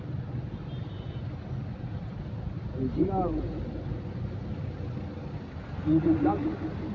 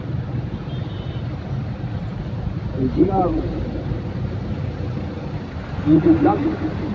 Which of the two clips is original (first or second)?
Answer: first